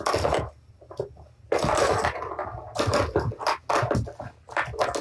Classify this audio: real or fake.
real